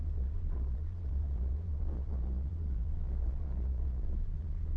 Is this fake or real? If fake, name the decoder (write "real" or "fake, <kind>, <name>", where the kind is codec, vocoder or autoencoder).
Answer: fake, vocoder, Vocos